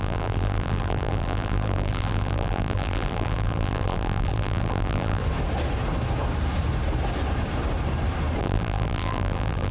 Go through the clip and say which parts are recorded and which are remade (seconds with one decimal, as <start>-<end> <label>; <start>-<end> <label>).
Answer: 0.0-5.2 remade; 5.2-8.4 recorded; 8.4-9.7 remade